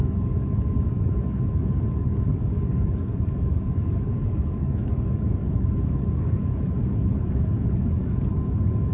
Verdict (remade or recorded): remade